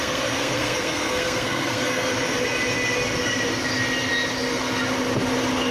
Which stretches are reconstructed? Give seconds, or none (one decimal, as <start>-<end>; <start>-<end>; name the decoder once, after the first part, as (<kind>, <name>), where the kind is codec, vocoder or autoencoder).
0.0-2.1 (codec, SNAC)

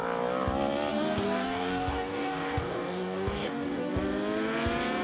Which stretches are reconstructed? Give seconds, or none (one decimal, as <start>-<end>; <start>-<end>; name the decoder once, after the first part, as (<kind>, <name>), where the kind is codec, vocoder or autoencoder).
0.9-3.9 (codec, DAC)

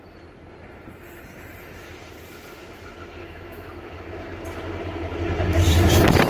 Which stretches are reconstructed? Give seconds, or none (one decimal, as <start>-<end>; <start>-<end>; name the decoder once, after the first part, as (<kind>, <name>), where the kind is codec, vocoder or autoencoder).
3.2-4.0 (autoencoder, DAC-VAE)

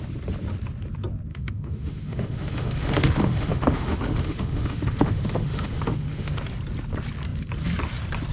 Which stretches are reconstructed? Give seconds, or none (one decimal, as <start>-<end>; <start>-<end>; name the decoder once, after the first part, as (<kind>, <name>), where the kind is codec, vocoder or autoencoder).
1.3-6.3 (autoencoder, DAC-VAE)

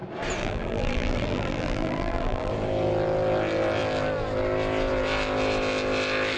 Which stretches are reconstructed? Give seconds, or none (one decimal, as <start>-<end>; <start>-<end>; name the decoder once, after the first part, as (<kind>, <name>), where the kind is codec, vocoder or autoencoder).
0.4-2.5 (vocoder, BigVGAN v2)

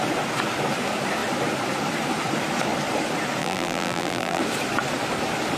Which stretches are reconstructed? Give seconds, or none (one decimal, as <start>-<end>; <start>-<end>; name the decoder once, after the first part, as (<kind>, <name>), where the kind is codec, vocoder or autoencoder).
3.4-4.4 (vocoder, BigVGAN v2)

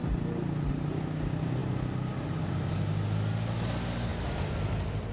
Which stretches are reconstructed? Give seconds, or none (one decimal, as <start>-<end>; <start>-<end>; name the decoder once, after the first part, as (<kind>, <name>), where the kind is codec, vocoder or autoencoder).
4.1-5.1 (vocoder, BigVGAN v2)

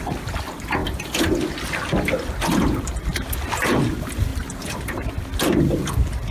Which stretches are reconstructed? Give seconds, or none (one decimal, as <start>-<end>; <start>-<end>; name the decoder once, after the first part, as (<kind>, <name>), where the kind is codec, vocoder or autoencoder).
none